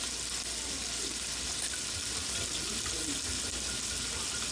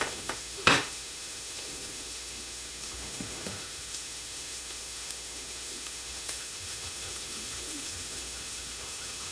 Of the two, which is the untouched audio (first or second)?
first